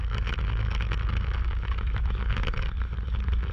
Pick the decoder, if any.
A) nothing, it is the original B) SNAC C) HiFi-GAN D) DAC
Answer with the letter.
D